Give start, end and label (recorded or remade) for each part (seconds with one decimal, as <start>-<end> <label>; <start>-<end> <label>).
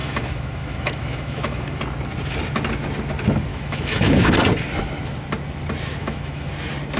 0.0-1.8 remade; 1.8-3.5 recorded; 3.5-4.3 remade; 4.3-6.0 recorded; 6.0-6.5 remade; 6.5-7.0 recorded